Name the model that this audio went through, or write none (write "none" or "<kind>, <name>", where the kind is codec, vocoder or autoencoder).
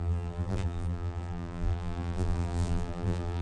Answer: vocoder, BigVGAN v2